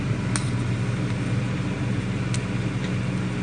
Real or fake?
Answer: real